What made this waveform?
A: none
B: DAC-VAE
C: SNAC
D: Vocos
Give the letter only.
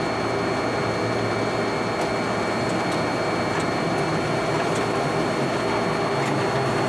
A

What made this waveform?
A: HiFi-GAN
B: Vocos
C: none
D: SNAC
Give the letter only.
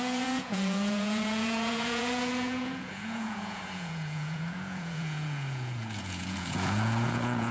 B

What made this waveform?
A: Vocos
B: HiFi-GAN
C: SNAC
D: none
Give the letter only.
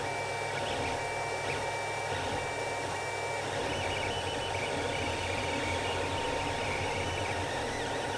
D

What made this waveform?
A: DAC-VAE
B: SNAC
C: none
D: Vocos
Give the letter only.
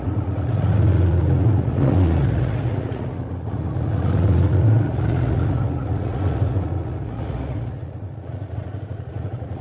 D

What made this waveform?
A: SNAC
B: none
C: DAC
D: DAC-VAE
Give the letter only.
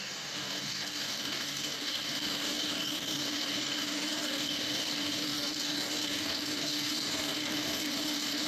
C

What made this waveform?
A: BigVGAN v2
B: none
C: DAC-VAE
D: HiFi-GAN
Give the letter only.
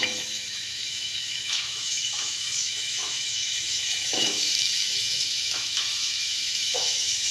C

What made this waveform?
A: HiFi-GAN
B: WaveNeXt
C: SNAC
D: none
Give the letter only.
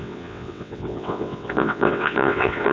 B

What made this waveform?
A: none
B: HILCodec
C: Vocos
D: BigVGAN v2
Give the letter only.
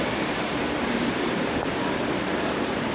D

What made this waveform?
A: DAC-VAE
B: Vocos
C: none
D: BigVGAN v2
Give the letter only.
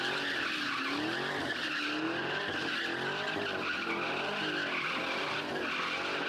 C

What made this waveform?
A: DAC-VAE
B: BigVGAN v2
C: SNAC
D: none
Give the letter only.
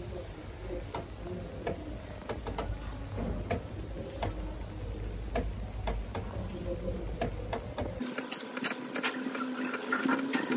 D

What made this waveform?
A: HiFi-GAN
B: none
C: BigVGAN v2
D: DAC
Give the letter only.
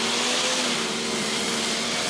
B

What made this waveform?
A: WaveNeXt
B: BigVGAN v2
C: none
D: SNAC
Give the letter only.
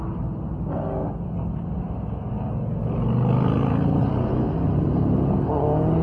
C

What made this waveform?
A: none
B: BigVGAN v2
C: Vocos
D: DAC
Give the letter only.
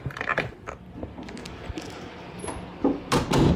A